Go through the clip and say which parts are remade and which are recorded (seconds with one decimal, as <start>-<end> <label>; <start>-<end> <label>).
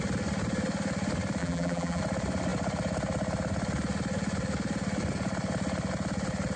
0.0-1.4 recorded; 1.4-2.0 remade; 2.0-6.6 recorded